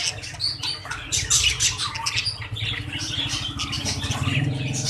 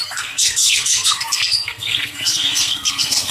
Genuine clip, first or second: first